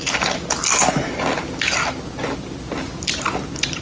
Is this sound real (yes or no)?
yes